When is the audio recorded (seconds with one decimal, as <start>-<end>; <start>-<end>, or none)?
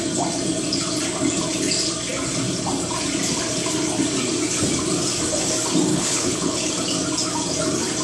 0.0-5.9; 6.7-8.0